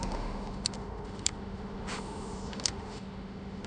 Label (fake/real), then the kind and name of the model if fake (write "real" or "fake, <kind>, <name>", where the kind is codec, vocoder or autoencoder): fake, autoencoder, DAC-VAE